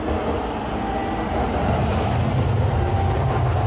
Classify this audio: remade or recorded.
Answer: recorded